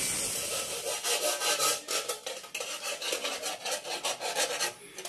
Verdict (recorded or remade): recorded